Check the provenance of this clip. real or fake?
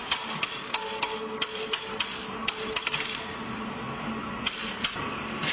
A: real